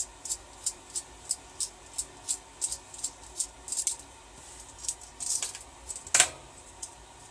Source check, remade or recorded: recorded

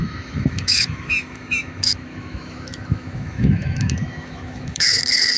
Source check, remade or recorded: remade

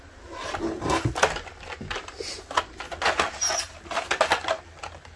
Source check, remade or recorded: recorded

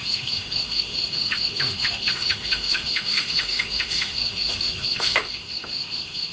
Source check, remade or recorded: remade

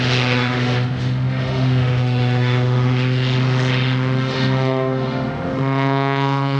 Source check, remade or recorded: remade